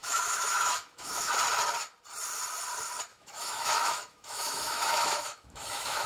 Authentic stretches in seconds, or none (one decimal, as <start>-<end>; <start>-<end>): 1.3-3.1